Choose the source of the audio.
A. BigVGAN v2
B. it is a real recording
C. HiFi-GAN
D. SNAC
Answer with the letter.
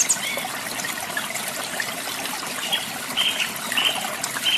B